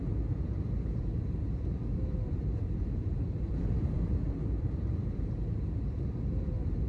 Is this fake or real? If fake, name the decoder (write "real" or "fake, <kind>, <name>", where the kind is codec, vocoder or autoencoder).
fake, vocoder, BigVGAN v2